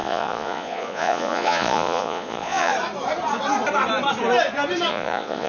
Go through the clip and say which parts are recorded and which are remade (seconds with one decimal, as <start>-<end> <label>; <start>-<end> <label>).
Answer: 0.0-2.7 remade; 2.7-4.9 recorded; 4.9-5.5 remade